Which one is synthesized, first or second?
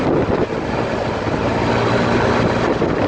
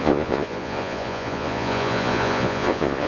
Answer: second